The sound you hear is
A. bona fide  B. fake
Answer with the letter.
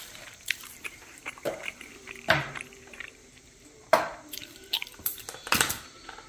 B